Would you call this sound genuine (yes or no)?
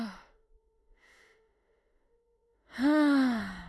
no